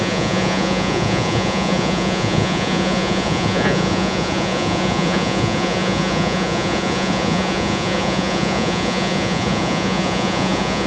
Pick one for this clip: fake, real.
fake